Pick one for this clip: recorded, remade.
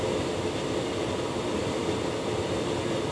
recorded